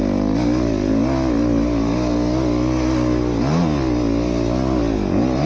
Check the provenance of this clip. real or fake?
real